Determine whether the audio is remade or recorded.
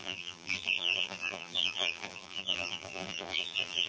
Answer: remade